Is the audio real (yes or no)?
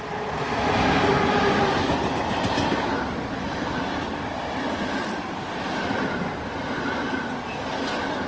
yes